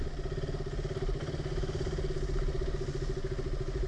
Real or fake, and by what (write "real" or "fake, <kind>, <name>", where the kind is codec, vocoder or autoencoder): real